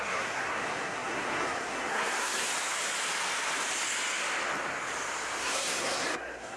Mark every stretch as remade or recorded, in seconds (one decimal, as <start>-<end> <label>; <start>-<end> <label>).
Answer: 0.0-2.5 remade; 2.5-5.4 recorded; 5.4-6.6 remade